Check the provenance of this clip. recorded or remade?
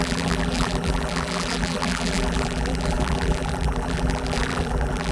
remade